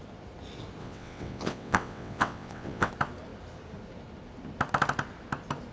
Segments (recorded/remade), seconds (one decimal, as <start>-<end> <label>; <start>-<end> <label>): 0.0-0.8 recorded; 0.8-2.9 remade; 2.9-5.7 recorded